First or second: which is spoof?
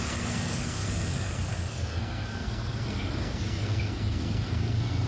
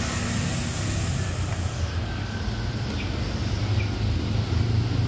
first